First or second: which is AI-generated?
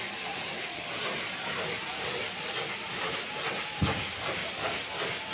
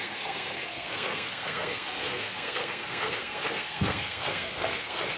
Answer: second